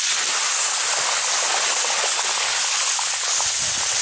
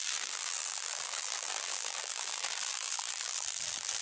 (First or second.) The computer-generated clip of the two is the second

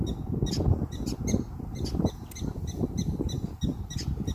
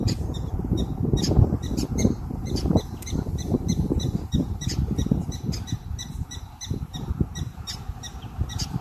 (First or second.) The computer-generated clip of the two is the second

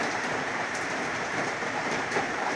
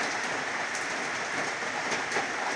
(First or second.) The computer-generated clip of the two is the first